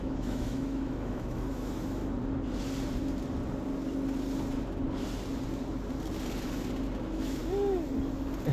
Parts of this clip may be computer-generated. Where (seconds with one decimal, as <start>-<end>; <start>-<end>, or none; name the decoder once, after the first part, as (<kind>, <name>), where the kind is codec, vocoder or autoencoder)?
0.0-2.0 (autoencoder, DAC-VAE); 7.0-7.4